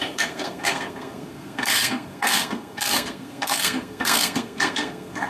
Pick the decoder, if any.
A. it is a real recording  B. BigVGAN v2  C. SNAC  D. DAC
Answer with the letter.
C